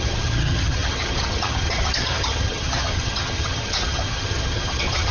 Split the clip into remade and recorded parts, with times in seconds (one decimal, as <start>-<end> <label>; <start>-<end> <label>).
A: 0.0-5.1 remade